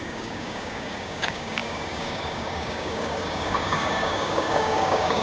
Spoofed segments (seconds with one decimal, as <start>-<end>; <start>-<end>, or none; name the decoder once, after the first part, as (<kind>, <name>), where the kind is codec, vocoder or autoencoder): 0.0-5.2 (codec, DAC)